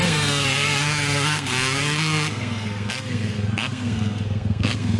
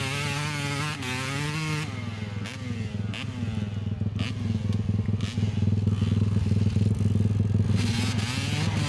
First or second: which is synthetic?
first